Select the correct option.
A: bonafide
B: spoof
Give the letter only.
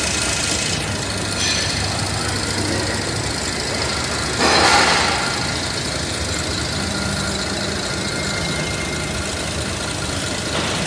A